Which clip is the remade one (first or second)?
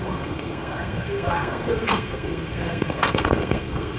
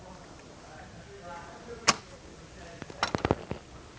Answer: first